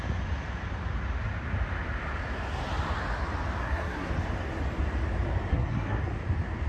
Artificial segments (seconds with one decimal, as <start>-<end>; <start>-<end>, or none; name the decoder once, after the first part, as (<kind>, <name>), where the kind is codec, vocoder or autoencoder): 3.6-4.1 (codec, SNAC); 5.5-6.0